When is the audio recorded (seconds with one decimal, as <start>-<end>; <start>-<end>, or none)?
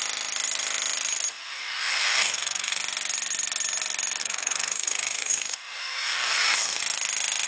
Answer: 0.0-1.3; 2.8-4.2; 6.8-7.5